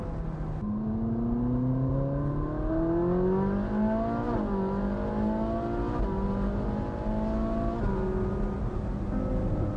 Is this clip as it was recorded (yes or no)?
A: yes